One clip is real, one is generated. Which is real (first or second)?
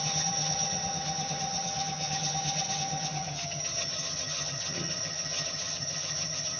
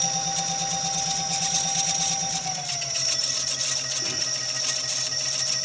second